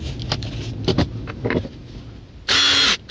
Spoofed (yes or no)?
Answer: no